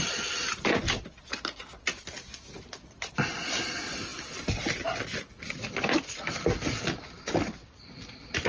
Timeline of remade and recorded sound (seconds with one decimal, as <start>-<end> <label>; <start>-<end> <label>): 0.0-8.5 recorded